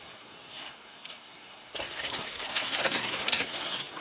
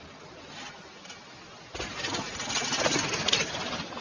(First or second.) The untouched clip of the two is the second